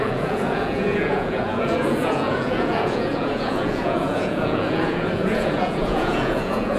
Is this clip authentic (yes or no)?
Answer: no